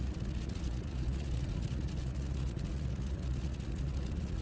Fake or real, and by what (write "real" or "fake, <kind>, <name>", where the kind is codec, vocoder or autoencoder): fake, vocoder, Vocos